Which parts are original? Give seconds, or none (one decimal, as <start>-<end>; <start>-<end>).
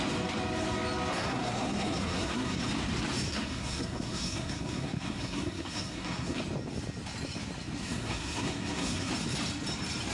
0.0-1.1; 2.6-3.3; 6.4-7.8; 9.1-10.1